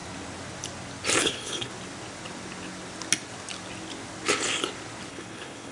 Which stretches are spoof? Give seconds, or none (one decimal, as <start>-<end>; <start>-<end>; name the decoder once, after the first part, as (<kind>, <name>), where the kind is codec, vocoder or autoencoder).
1.2-1.7 (codec, HILCodec); 5.1-5.7